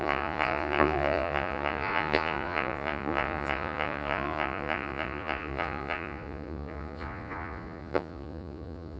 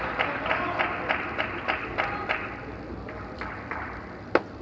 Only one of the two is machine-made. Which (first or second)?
first